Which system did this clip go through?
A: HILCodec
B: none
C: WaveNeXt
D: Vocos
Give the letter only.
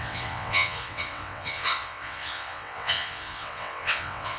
C